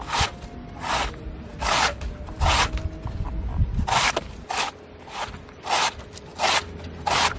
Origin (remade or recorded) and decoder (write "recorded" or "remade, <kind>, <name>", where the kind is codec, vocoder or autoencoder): recorded